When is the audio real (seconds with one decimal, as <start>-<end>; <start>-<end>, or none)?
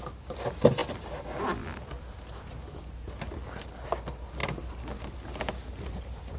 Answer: 0.0-6.4